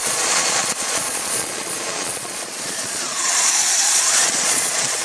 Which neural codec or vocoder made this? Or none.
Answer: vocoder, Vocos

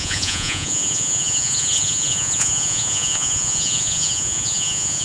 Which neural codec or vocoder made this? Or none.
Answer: vocoder, Vocos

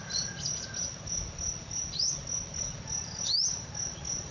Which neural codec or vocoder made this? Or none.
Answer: none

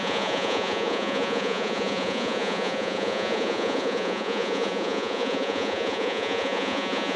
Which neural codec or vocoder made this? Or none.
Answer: vocoder, Vocos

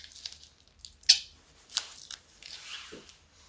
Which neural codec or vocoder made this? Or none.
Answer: none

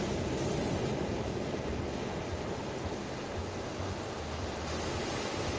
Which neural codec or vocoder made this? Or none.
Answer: none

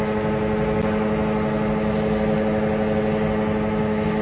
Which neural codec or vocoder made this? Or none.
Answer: none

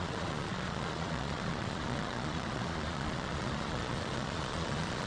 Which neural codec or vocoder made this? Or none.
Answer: vocoder, Vocos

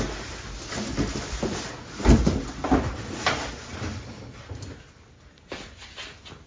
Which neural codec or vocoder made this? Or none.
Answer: none